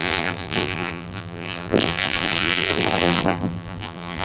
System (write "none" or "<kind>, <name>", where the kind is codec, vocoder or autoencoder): vocoder, BigVGAN v2